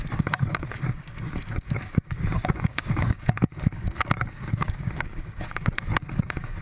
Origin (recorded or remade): remade